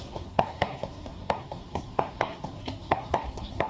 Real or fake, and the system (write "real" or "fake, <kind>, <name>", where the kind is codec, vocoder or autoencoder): fake, codec, SNAC